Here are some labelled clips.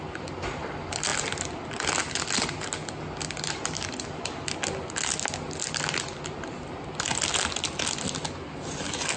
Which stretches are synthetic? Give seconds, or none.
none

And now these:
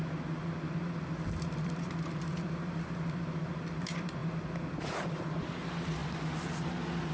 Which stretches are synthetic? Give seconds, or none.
0.0-7.1

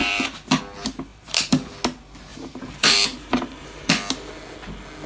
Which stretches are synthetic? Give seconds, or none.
0.0-0.6; 1.1-1.7; 2.3-3.9

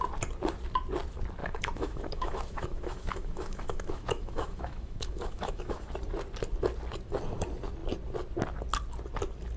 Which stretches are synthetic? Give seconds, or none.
1.4-5.9

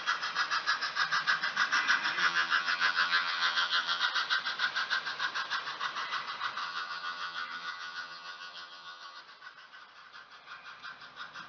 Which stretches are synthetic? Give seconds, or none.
2.2-4.0; 6.6-9.2